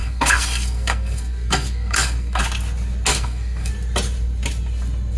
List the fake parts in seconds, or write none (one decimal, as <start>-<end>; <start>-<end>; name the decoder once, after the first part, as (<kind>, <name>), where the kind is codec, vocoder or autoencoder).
0.0-2.4 (codec, SNAC); 3.1-3.7